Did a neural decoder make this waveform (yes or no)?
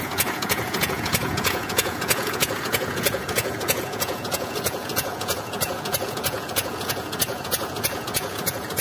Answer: yes